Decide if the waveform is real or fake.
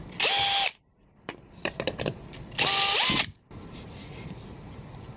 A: real